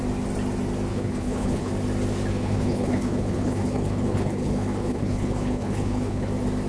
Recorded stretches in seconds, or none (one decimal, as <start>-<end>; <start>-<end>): 0.0-0.9; 1.7-2.3; 6.3-6.7